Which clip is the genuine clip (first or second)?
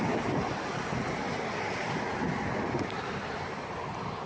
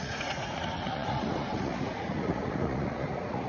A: first